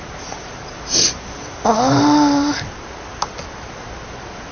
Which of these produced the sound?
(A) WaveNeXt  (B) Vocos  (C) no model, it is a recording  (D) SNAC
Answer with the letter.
C